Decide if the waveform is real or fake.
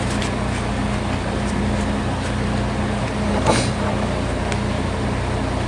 real